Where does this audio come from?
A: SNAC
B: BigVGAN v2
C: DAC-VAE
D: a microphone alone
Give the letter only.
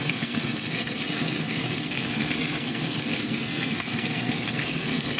A